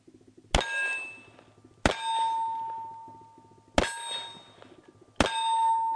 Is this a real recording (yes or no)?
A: yes